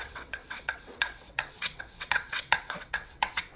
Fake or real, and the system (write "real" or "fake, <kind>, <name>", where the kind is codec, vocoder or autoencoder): fake, vocoder, WaveNeXt